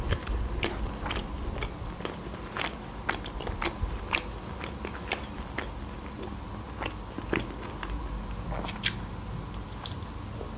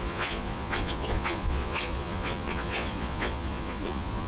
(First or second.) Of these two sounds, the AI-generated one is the second